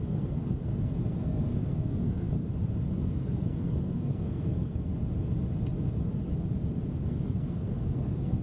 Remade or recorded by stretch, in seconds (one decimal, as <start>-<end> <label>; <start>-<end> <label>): 0.0-2.5 remade; 2.5-3.0 recorded; 3.0-4.9 remade; 4.9-7.0 recorded; 7.0-8.4 remade